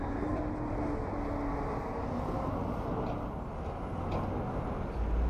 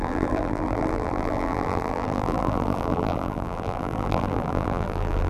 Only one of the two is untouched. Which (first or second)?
first